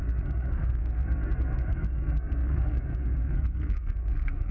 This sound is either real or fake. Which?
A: fake